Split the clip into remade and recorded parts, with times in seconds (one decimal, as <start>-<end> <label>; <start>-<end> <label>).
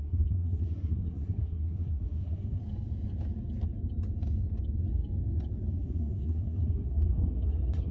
0.0-2.6 remade; 2.6-5.7 recorded; 5.7-7.9 remade